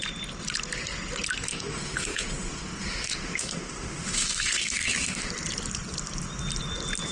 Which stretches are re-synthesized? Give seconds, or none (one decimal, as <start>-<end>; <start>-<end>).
1.5-5.3